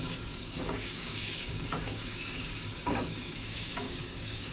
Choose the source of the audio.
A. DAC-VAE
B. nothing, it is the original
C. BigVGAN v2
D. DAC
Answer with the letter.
D